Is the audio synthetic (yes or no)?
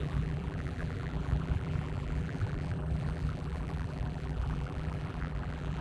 yes